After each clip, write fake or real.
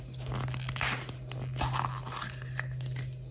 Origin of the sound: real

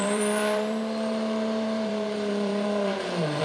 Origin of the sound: fake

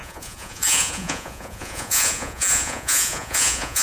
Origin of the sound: fake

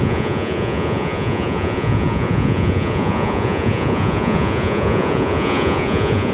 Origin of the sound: fake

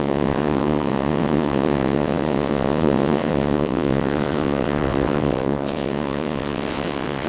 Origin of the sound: fake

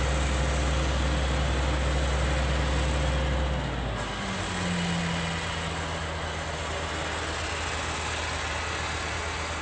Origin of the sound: real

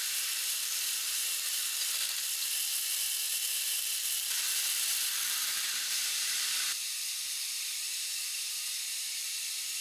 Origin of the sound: fake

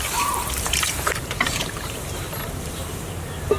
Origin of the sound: fake